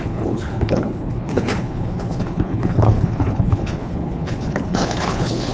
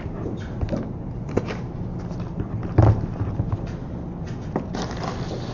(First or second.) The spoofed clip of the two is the first